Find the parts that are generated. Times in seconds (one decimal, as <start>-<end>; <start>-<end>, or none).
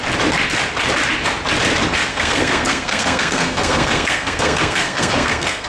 2.1-5.7